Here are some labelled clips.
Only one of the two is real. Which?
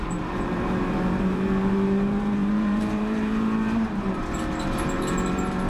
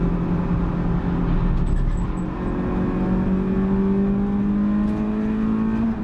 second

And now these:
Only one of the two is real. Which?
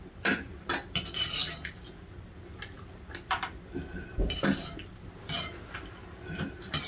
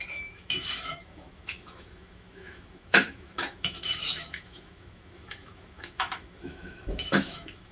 first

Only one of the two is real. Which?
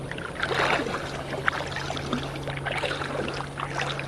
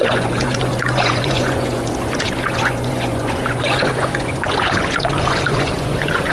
first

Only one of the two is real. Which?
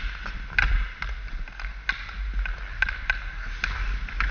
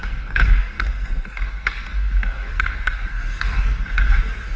first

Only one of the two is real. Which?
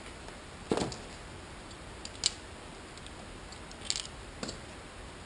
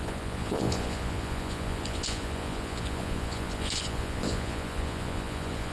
first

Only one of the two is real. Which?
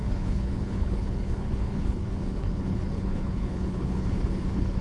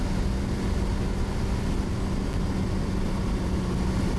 second